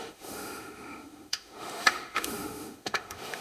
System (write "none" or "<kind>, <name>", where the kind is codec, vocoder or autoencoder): autoencoder, DAC-VAE